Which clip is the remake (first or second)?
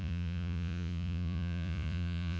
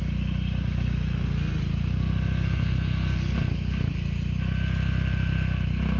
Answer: first